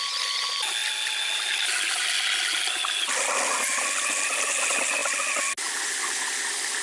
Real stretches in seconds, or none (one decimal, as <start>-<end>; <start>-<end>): 0.0-6.8